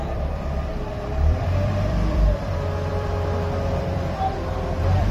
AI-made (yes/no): yes